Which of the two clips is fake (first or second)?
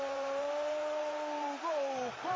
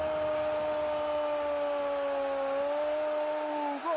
first